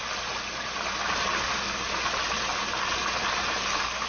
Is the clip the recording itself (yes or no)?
yes